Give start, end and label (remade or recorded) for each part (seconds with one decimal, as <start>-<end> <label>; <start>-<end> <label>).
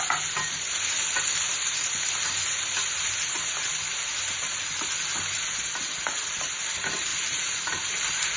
0.0-8.4 recorded